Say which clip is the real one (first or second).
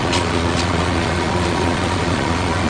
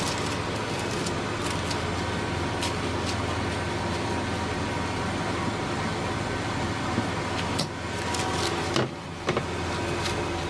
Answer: second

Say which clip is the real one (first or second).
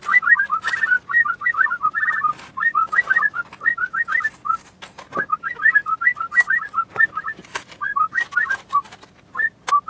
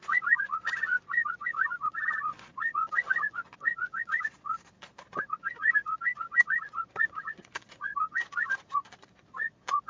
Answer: first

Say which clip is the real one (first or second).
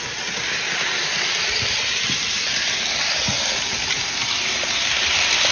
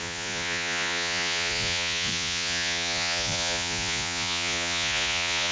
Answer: first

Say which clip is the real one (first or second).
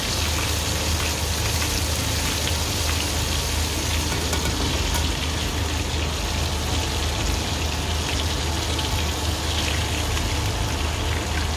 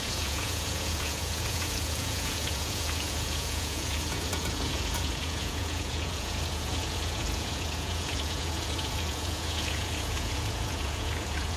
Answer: first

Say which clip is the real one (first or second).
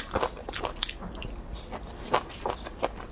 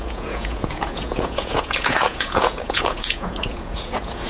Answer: first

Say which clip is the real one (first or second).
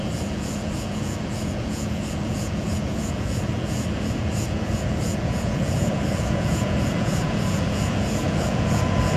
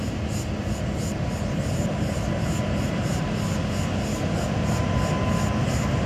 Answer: second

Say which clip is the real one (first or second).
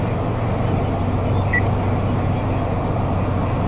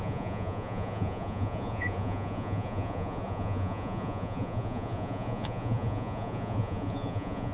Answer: first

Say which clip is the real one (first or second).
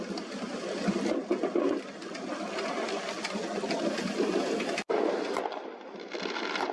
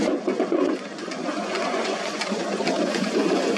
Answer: first